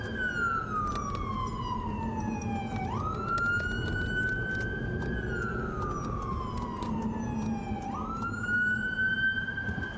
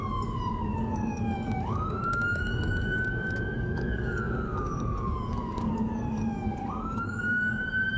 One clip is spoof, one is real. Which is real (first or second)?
first